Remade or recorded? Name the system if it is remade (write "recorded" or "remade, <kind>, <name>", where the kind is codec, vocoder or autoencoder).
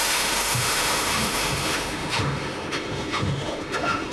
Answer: remade, autoencoder, DAC-VAE